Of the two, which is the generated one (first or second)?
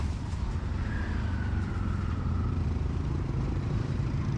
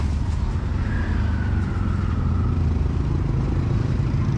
first